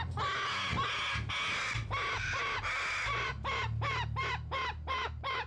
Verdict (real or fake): real